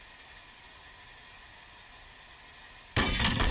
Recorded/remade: recorded